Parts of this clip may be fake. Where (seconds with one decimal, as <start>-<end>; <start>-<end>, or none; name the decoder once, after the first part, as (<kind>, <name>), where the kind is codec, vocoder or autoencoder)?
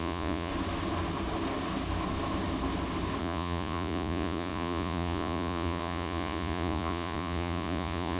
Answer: 0.0-0.5 (vocoder, Vocos); 3.2-8.2